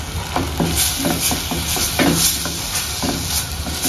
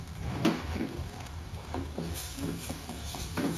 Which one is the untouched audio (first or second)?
first